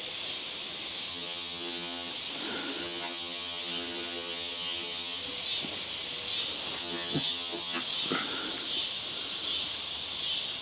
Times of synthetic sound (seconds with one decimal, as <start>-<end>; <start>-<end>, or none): 1.1-2.1; 2.8-5.2; 6.8-7.8